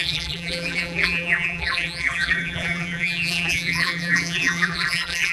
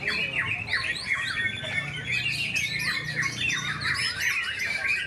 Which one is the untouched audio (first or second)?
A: second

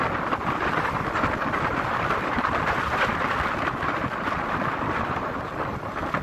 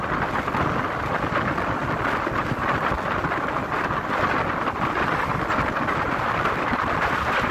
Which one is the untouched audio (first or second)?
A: second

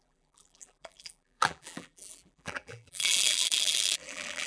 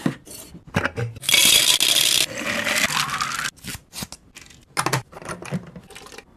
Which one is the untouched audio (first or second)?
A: second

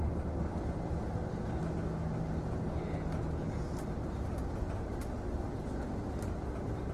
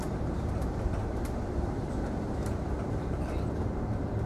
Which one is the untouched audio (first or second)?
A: first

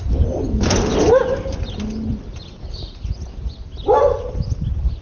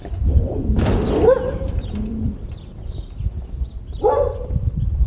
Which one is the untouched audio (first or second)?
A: first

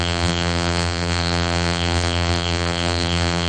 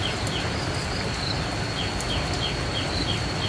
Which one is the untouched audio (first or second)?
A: second